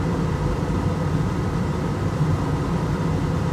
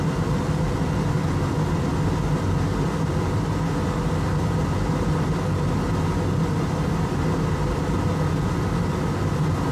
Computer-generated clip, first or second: first